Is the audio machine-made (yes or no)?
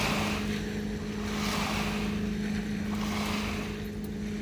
no